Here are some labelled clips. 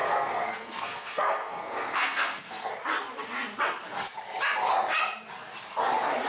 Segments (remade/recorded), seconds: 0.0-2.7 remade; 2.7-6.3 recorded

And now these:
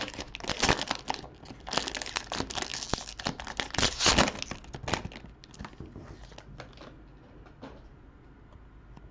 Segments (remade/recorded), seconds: 0.0-9.1 recorded

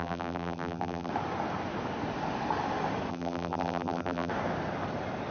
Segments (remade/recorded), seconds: 0.0-1.1 remade; 1.1-3.1 recorded; 3.1-4.3 remade; 4.3-5.3 recorded

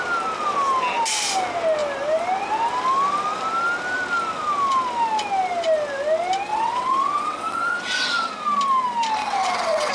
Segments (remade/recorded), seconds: 0.0-6.5 recorded; 6.5-8.3 remade; 8.3-9.2 recorded; 9.2-9.9 remade

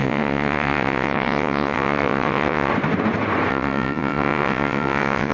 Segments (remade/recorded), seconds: 0.0-2.7 remade; 2.7-3.5 recorded; 3.5-5.3 remade

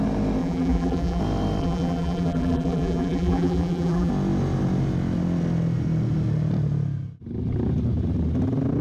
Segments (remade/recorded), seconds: 0.0-0.4 recorded; 0.4-1.2 remade; 1.2-1.6 recorded; 1.6-4.1 remade; 4.1-8.8 recorded

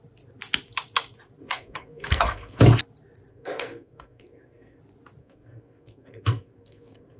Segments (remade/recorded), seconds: 0.0-1.4 recorded; 1.4-2.6 remade; 2.6-3.3 recorded; 3.3-4.8 remade; 4.8-5.2 recorded; 5.2-7.2 remade

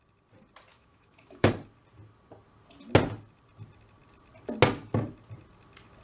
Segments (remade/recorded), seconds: 0.0-0.7 recorded; 0.7-1.5 remade; 1.5-6.0 recorded